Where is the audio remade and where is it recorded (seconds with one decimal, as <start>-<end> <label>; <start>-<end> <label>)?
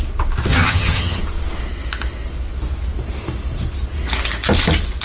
0.0-0.5 recorded; 0.5-1.2 remade; 1.2-5.0 recorded